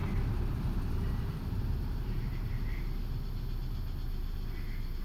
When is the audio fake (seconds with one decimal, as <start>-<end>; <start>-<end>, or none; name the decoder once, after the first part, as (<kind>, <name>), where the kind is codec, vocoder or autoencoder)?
0.0-2.8 (vocoder, BigVGAN v2)